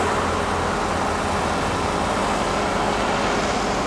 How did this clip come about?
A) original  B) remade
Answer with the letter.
A